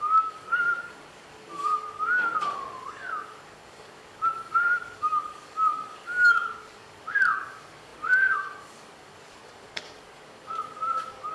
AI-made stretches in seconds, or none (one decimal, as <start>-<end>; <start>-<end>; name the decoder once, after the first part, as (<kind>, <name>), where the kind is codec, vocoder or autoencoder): 0.0-11.3 (codec, DAC)